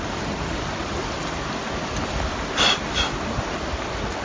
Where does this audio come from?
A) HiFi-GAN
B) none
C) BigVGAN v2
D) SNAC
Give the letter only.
B